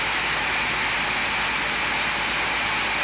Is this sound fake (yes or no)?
no